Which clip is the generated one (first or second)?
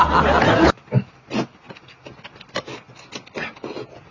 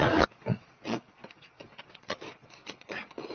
second